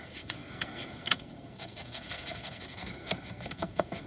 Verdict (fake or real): fake